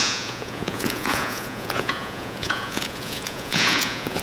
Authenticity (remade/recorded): remade